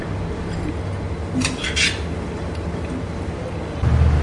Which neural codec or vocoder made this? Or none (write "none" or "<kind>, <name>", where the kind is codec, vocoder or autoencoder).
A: none